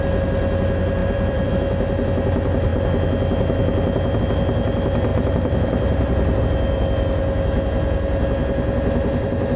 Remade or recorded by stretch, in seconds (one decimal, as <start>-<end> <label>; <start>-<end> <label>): 0.0-1.0 recorded; 1.0-1.5 remade; 1.5-5.1 recorded; 5.1-6.4 remade; 6.4-9.6 recorded